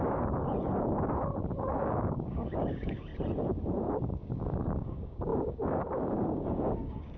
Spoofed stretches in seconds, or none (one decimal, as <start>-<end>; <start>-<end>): 1.8-3.1; 4.0-7.2